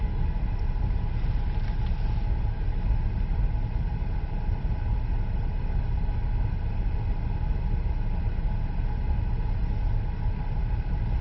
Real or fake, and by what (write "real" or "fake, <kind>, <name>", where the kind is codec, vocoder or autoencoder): real